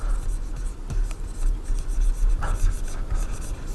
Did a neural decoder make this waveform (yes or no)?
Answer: no